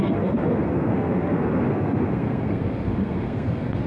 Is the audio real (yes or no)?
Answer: no